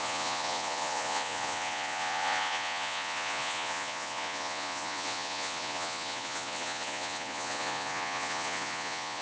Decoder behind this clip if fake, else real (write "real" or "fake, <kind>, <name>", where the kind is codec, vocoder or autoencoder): fake, vocoder, Vocos